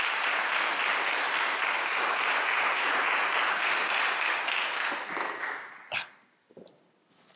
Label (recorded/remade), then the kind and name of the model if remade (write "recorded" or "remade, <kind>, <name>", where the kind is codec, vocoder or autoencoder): recorded